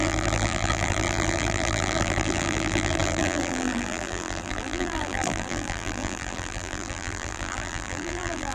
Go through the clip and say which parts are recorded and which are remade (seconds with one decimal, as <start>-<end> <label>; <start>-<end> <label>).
0.0-8.5 remade